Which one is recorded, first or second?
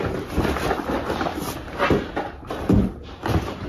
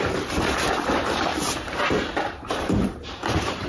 first